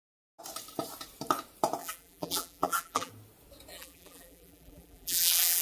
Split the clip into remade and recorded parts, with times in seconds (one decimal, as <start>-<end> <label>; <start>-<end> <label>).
0.0-1.8 recorded; 1.8-3.1 remade; 3.1-3.7 recorded; 3.7-5.6 remade